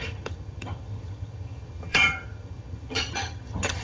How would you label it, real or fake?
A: fake